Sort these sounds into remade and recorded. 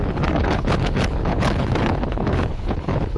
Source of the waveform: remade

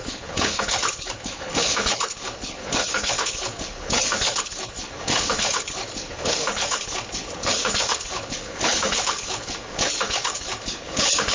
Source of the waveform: remade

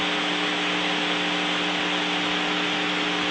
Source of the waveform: recorded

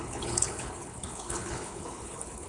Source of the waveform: remade